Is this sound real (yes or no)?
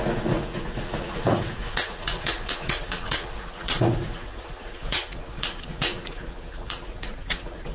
no